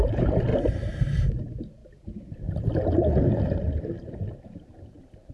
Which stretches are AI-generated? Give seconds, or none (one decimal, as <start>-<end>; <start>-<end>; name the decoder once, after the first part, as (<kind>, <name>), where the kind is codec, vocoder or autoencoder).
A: 0.0-1.8 (vocoder, BigVGAN v2); 4.3-5.3